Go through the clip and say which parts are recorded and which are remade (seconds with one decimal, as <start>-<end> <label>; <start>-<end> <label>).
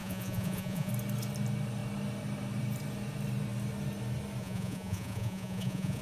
0.0-0.9 remade; 0.9-4.4 recorded; 4.4-6.0 remade